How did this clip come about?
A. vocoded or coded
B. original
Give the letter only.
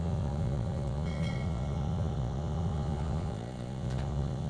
A